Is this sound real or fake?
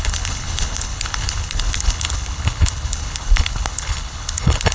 fake